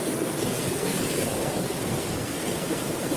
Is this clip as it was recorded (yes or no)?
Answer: no